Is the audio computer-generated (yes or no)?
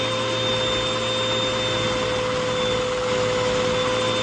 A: no